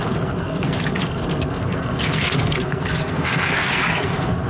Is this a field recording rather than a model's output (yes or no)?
no